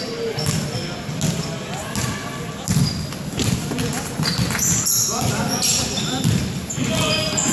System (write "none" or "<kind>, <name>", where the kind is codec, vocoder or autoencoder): none